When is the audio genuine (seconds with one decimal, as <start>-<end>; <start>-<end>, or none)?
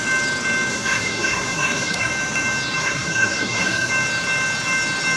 0.0-0.7; 2.1-2.8; 3.9-5.2